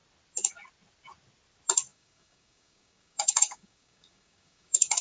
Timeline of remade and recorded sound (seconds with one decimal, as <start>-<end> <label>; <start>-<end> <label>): 0.0-1.9 recorded; 1.9-5.0 remade